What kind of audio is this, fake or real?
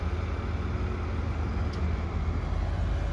real